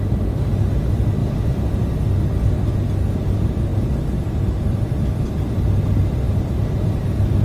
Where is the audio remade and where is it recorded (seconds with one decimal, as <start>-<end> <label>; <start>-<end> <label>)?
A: 0.0-1.2 recorded; 1.2-1.9 remade; 1.9-7.4 recorded